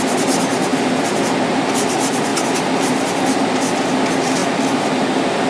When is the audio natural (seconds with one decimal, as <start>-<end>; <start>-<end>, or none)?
0.0-5.5